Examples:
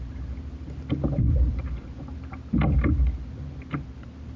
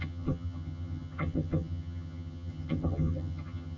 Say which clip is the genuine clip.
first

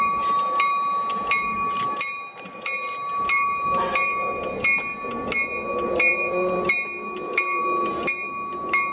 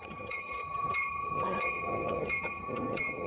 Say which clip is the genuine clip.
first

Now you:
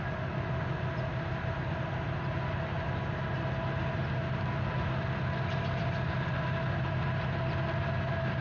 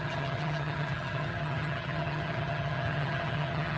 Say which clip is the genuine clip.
first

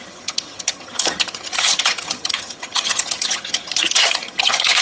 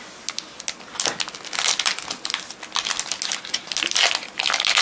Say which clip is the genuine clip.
second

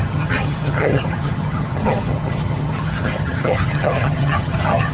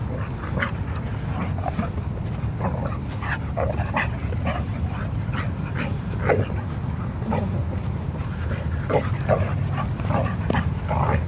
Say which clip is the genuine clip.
second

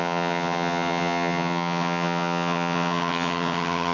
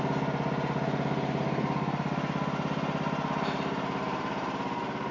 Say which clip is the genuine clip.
second